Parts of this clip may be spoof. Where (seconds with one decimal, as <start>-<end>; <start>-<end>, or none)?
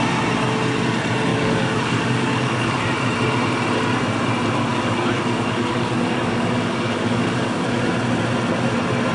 1.3-2.8; 4.7-7.9